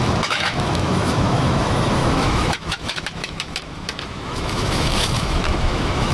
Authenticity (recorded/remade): remade